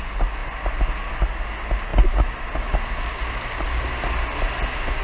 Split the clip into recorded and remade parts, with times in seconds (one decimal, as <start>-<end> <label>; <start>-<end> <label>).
0.0-5.0 recorded